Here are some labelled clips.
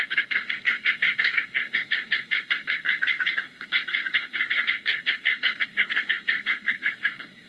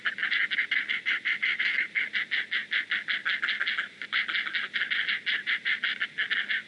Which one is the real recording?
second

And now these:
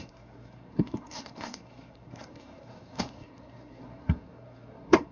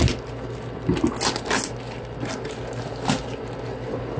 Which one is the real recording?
second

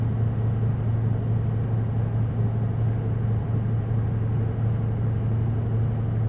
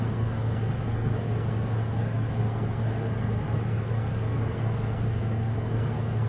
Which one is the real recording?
first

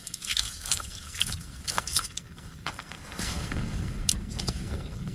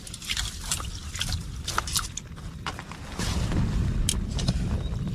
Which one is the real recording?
second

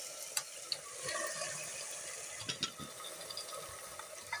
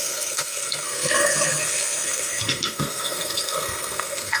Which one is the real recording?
first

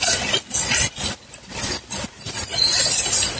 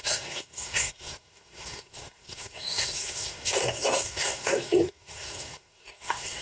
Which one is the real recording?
first